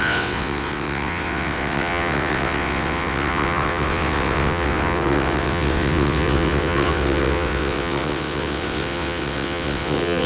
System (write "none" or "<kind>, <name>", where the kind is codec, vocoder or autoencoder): vocoder, WaveNeXt